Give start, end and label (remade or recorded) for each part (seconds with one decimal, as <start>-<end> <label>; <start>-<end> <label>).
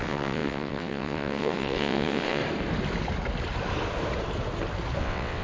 0.0-2.4 remade; 2.4-5.0 recorded; 5.0-5.4 remade